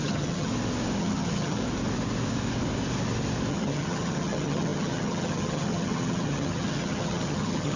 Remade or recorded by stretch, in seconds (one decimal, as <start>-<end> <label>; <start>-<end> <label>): 0.0-0.5 remade; 0.5-1.0 recorded; 1.0-1.6 remade; 1.6-3.5 recorded; 3.5-7.8 remade